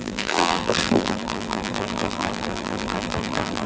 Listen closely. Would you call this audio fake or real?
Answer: fake